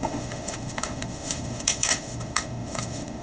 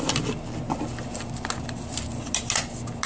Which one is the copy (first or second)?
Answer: first